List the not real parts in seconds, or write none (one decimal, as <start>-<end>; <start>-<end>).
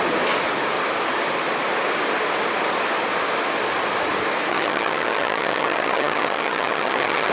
4.5-7.3